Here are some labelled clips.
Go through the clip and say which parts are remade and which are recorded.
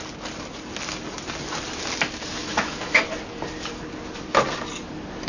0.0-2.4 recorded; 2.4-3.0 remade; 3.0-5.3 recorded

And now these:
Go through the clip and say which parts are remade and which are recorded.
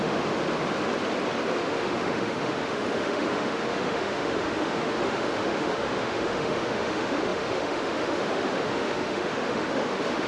0.0-0.4 remade; 0.4-1.6 recorded; 1.6-10.3 remade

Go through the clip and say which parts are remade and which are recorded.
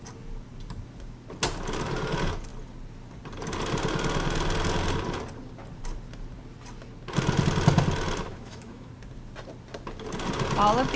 0.0-8.3 recorded; 8.3-8.9 remade; 8.9-11.0 recorded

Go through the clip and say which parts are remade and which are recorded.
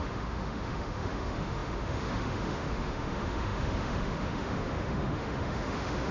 0.0-6.1 remade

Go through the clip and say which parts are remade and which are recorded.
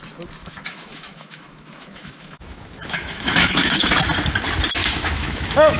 0.0-0.4 recorded; 0.4-3.9 remade; 3.9-4.8 recorded; 4.8-5.8 remade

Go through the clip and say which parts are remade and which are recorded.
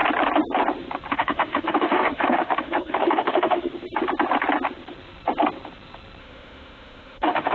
0.0-1.1 recorded; 1.1-3.7 remade; 3.7-6.2 recorded; 6.2-7.5 remade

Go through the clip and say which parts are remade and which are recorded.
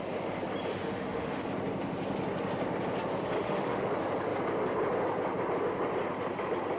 0.0-0.7 recorded; 0.7-1.4 remade; 1.4-3.4 recorded; 3.4-3.9 remade; 3.9-6.8 recorded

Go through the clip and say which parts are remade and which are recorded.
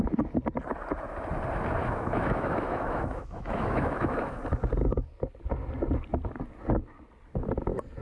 0.0-1.8 recorded; 1.8-4.4 remade; 4.4-8.0 recorded